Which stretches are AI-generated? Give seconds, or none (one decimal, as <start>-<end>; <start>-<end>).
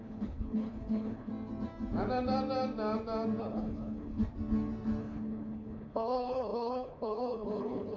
0.0-1.3; 3.4-4.2; 5.0-8.0